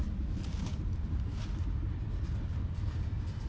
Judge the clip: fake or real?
real